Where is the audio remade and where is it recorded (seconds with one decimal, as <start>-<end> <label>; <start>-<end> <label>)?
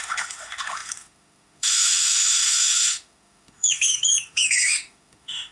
0.0-5.5 remade